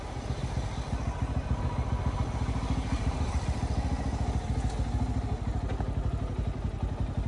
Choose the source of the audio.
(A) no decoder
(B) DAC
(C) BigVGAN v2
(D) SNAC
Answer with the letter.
A